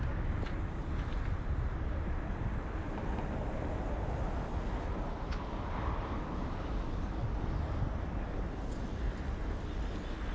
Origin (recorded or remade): recorded